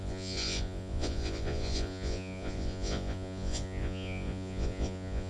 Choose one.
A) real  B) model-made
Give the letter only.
B